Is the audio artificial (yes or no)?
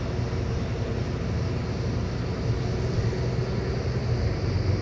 no